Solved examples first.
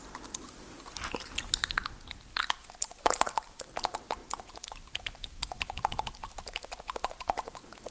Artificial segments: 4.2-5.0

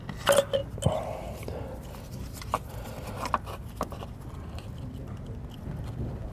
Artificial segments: none

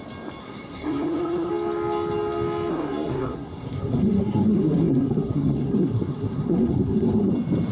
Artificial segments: 0.4-1.5; 2.7-7.3

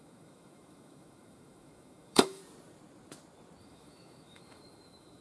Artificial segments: 0.0-2.4; 3.6-5.2

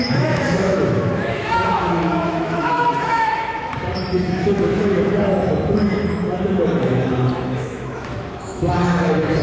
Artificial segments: 0.0-9.4

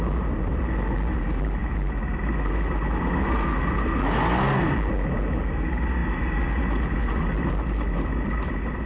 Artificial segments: none